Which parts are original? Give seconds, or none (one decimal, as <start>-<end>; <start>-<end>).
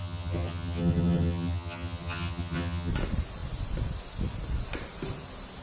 2.9-5.6